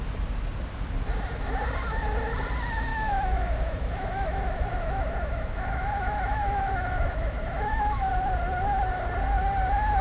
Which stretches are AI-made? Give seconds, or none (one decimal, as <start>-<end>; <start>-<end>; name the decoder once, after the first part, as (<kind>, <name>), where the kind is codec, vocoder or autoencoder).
2.9-8.1 (autoencoder, DAC-VAE)